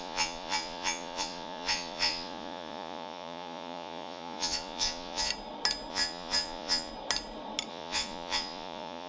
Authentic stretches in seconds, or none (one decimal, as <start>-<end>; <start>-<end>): 5.3-5.9; 6.9-7.7